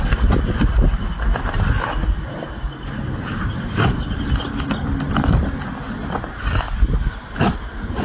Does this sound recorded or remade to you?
recorded